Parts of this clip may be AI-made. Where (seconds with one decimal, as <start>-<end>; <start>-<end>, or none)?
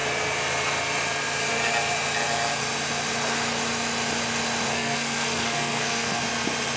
4.7-6.2